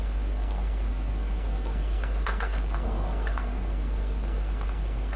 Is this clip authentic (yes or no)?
no